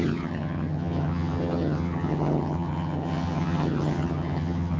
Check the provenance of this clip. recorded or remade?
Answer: remade